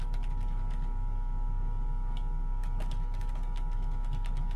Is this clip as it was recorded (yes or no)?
no